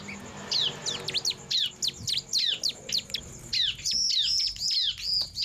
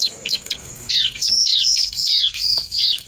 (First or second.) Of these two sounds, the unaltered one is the first